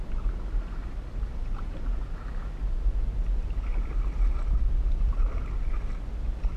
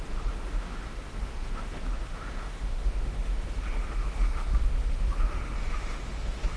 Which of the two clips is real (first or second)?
first